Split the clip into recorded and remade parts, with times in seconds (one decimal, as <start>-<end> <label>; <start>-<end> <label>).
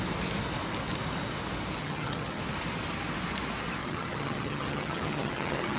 0.0-1.8 recorded; 1.8-2.4 remade; 2.4-3.8 recorded; 3.8-5.8 remade